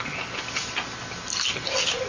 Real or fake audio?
real